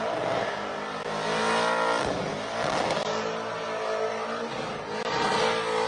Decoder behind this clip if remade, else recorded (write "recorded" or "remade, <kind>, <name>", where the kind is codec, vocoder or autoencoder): recorded